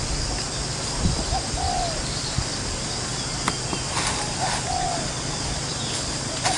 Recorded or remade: recorded